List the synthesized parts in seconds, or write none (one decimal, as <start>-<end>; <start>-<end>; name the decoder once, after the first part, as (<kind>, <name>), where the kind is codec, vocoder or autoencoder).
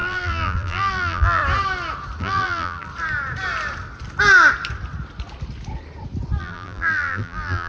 0.0-1.4 (vocoder, BigVGAN v2); 2.2-2.9; 6.4-7.7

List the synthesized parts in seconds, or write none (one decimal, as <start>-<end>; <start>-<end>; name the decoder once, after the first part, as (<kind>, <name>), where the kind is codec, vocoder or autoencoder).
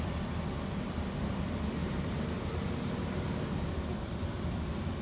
1.8-2.4 (vocoder, BigVGAN v2)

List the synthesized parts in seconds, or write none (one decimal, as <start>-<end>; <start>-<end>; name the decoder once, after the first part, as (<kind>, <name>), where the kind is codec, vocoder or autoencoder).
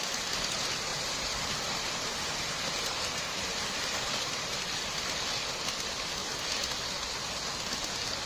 0.9-4.6 (vocoder, BigVGAN v2)